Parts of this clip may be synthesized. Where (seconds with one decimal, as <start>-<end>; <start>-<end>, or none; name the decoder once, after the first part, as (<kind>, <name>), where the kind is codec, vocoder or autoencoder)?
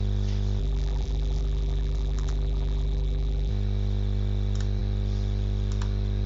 0.6-3.5 (vocoder, BigVGAN v2)